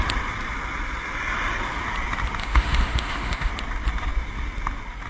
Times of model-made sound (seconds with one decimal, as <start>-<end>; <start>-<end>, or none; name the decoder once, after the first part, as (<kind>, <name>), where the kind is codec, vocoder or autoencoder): 2.4-3.5 (autoencoder, DAC-VAE)